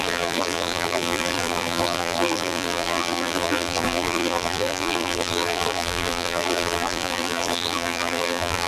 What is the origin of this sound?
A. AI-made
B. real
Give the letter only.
A